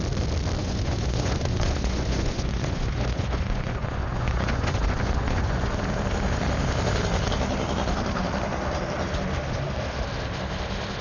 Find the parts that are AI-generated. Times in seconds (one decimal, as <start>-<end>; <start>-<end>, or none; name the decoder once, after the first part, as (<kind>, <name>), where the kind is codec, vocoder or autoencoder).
0.6-5.7 (vocoder, Vocos)